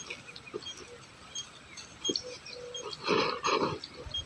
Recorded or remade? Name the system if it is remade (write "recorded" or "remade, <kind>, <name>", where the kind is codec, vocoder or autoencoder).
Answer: recorded